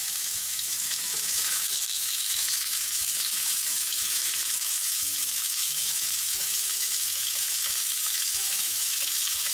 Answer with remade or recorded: remade